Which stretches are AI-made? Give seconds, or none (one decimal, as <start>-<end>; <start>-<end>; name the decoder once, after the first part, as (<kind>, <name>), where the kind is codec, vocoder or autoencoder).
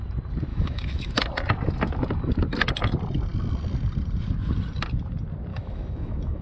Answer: 0.5-1.1 (autoencoder, DAC-VAE); 5.5-6.4